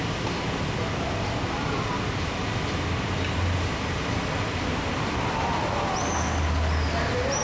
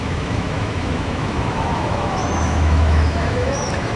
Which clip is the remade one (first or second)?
second